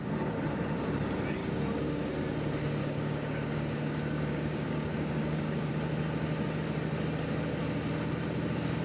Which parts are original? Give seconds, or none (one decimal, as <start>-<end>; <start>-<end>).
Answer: 0.0-1.4; 2.1-2.8; 5.7-8.8